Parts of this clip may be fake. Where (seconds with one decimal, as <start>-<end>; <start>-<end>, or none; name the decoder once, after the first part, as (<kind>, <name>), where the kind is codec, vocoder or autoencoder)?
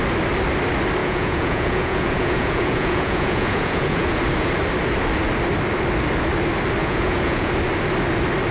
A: 1.0-4.2 (vocoder, Vocos); 6.8-7.5